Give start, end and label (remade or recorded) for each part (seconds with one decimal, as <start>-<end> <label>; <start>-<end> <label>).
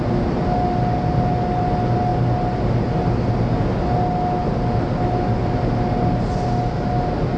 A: 0.0-7.4 recorded